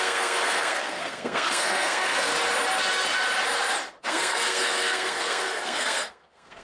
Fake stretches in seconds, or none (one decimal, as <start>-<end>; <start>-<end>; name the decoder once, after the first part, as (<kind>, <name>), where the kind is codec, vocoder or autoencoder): 0.0-2.3 (codec, SNAC); 4.0-6.6